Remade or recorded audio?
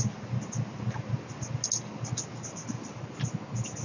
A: recorded